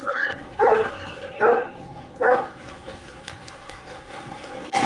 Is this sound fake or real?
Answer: fake